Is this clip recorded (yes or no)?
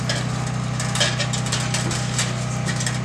yes